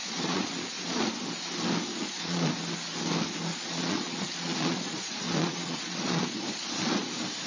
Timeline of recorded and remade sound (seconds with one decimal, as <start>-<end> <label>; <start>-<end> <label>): 0.0-1.0 remade; 1.0-1.9 recorded; 1.9-2.5 remade; 2.5-3.5 recorded; 3.5-7.1 remade; 7.1-7.5 recorded